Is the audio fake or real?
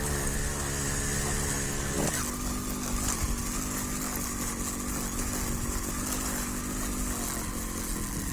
real